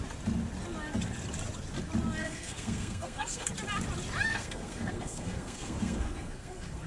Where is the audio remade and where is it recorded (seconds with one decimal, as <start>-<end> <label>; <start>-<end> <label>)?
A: 0.0-2.2 recorded; 2.2-3.5 remade; 3.5-4.3 recorded; 4.3-6.9 remade